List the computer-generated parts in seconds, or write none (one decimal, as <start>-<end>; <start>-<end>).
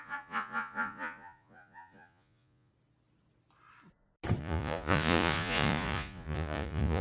0.0-2.7; 4.4-7.0